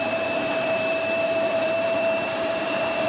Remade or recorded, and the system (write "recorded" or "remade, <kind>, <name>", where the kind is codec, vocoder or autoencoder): remade, vocoder, BigVGAN v2